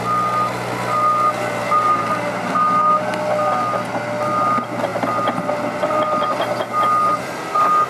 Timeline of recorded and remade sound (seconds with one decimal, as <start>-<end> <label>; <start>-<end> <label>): 0.0-7.9 recorded